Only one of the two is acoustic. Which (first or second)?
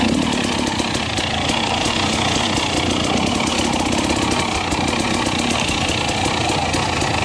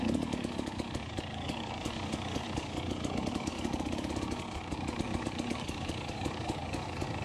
first